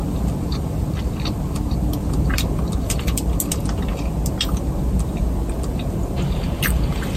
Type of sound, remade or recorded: recorded